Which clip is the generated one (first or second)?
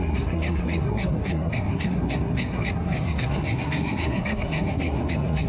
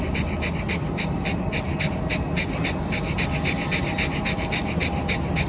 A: first